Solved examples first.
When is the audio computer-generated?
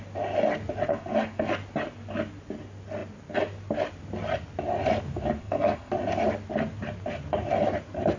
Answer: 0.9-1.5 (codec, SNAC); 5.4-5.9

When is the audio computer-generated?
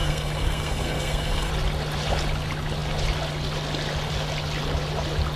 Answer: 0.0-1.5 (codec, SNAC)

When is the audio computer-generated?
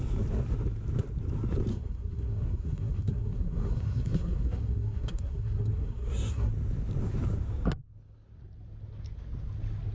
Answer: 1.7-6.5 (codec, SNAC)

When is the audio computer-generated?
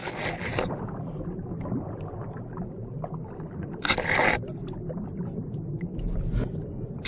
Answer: none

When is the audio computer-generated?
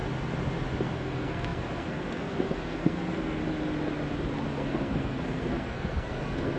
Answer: 0.8-3.4 (codec, SNAC); 4.5-6.6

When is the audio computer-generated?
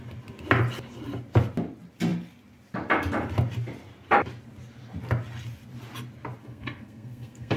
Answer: 6.4-7.6 (codec, SNAC)